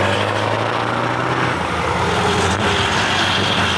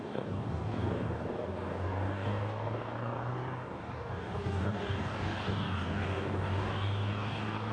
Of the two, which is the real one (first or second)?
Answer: first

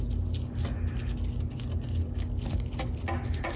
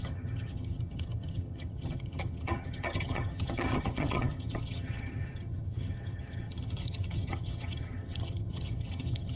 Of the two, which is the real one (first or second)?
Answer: first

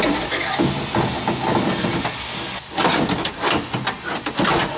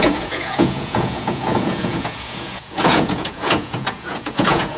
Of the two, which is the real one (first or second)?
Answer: first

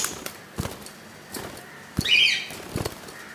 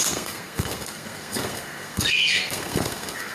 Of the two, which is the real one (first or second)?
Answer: first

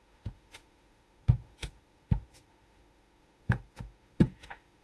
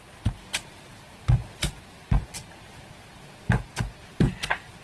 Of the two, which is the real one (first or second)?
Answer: second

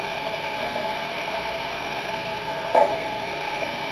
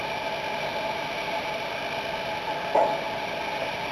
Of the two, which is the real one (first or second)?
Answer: second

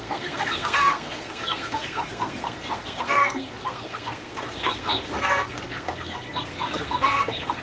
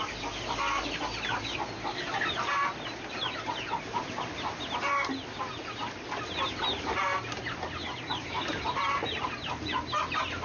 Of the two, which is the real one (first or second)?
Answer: second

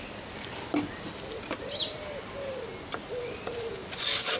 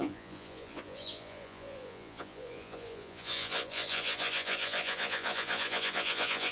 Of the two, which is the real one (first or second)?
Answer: first